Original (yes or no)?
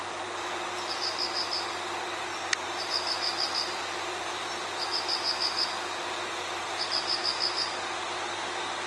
yes